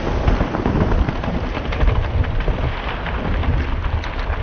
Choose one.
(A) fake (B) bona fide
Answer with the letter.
A